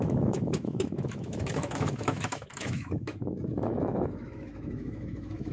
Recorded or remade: remade